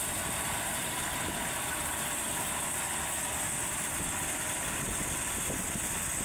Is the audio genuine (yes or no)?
yes